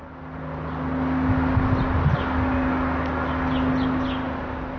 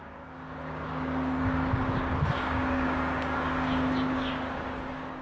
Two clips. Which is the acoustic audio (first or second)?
first